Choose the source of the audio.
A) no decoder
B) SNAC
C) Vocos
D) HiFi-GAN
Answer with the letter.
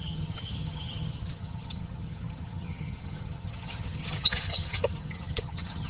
D